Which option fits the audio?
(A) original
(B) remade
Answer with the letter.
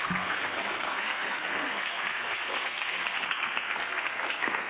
B